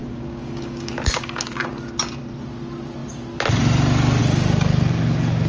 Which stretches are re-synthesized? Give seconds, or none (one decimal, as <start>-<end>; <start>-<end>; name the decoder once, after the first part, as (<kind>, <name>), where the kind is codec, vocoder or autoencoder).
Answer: 0.0-1.7 (codec, DAC)